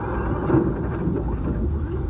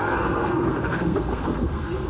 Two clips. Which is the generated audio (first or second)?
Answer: second